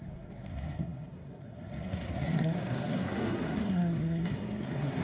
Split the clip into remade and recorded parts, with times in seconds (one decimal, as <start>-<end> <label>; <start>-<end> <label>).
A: 0.0-5.0 remade